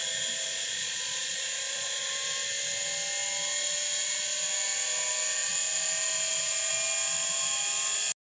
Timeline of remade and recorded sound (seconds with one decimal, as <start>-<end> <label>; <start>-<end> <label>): 0.0-2.1 remade; 2.1-8.4 recorded